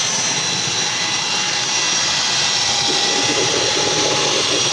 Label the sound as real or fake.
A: real